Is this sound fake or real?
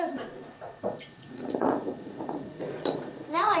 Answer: fake